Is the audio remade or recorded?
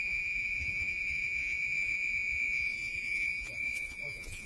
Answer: remade